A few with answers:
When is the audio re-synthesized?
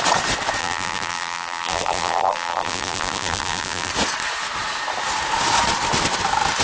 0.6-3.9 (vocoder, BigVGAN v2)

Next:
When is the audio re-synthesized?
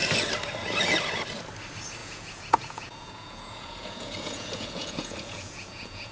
2.0-6.1 (vocoder, Vocos)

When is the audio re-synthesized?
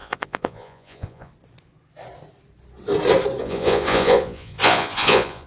0.0-1.3 (vocoder, Vocos); 3.4-5.5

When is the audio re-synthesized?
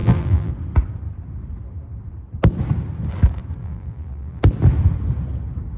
0.0-0.5 (vocoder, BigVGAN v2); 3.6-4.4